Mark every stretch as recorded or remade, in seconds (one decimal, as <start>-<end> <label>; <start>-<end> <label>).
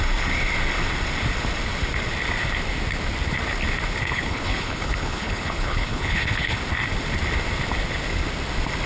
0.0-4.0 recorded; 4.0-6.6 remade; 6.6-8.9 recorded